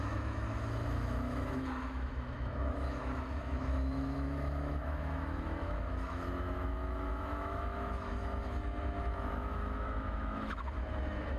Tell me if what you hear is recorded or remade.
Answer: remade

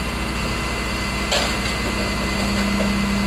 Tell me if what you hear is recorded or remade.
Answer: recorded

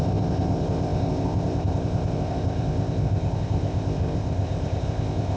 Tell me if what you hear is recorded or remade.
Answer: remade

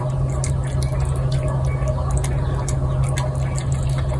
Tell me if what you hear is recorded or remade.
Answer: recorded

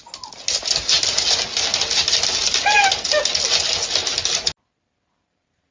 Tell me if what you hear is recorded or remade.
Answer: recorded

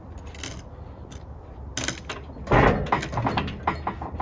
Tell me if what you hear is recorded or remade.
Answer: recorded